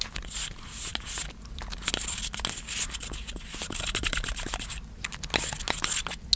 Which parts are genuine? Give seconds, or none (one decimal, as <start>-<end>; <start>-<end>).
0.0-6.4